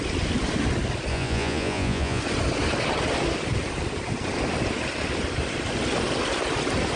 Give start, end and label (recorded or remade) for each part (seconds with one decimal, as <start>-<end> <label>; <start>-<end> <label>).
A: 0.0-1.1 recorded; 1.1-2.2 remade; 2.2-7.0 recorded